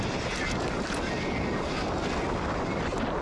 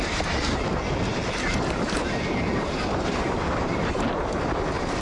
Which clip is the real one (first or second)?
first